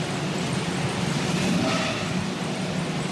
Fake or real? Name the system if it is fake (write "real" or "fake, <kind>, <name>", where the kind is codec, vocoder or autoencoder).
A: real